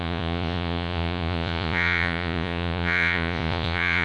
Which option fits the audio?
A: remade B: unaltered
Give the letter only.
A